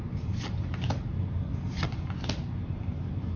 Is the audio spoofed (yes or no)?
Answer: no